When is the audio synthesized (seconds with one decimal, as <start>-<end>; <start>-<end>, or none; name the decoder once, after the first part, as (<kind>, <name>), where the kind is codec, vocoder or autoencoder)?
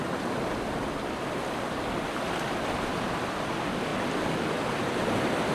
none